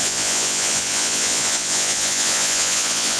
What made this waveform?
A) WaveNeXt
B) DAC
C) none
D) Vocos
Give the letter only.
D